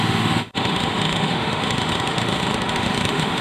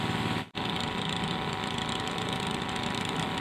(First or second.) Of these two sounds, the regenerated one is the first